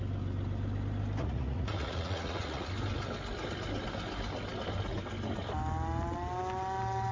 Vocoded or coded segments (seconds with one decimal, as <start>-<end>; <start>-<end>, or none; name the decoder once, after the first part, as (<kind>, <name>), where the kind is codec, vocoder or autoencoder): 1.2-2.7 (vocoder, Vocos)